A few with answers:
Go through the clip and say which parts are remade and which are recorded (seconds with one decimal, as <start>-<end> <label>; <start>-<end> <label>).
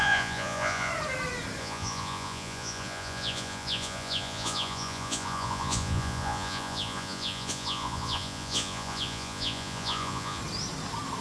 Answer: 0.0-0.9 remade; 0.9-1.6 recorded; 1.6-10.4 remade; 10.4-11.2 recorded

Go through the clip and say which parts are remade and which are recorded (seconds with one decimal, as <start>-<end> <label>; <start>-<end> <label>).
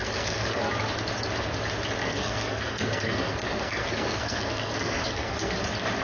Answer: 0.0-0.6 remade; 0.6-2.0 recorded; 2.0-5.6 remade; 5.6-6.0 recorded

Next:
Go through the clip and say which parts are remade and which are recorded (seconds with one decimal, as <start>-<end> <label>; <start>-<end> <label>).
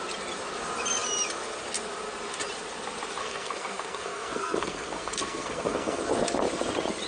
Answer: 0.0-3.2 recorded; 3.2-6.0 remade; 6.0-7.1 recorded